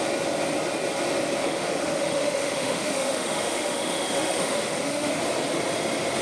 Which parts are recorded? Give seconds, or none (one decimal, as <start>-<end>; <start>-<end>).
0.0-1.4; 5.1-6.2